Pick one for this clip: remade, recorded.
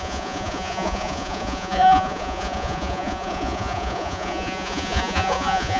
remade